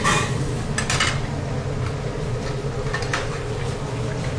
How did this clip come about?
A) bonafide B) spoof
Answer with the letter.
A